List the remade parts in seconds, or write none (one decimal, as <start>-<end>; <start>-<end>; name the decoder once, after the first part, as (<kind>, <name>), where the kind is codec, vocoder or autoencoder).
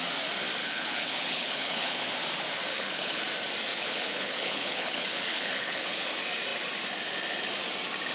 0.6-2.0 (codec, HILCodec); 2.7-3.2; 3.7-6.1